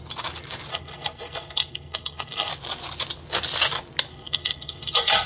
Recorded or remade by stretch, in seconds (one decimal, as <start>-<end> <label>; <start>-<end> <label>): 0.0-0.7 recorded; 0.7-2.5 remade; 2.5-4.1 recorded; 4.1-5.3 remade